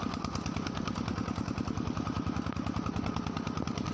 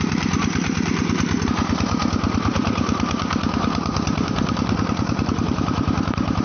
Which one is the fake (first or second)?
second